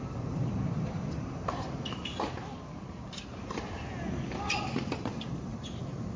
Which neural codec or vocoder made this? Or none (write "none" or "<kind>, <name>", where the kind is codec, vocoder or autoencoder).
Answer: none